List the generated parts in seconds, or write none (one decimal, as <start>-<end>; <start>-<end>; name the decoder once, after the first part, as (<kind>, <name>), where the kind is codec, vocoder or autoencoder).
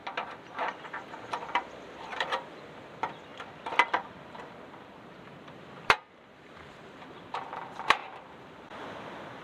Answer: 0.8-3.3 (vocoder, BigVGAN v2); 4.2-9.4